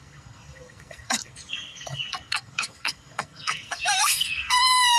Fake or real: fake